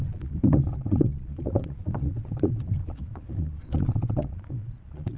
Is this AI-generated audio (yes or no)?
yes